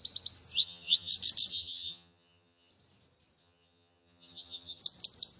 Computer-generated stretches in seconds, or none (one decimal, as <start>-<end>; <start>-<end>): 0.6-1.1; 1.5-2.7; 3.4-4.8